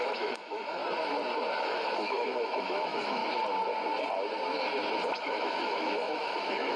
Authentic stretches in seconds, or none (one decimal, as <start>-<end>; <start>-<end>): 0.8-1.6; 3.2-5.1